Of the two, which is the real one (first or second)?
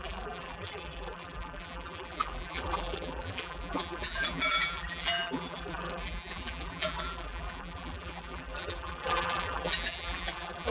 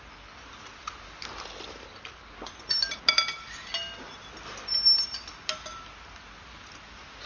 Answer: second